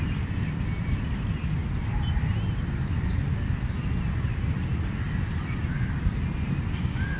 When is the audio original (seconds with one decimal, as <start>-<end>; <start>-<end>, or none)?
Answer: 0.0-7.2